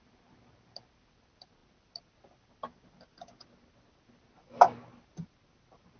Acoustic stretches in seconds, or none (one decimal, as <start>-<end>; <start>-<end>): 0.0-6.0